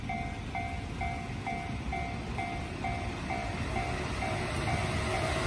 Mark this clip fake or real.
real